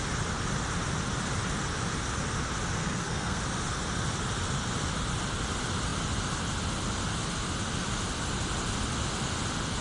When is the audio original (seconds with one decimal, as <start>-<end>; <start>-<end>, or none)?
0.0-2.8; 3.4-9.8